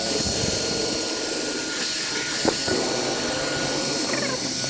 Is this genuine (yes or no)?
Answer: yes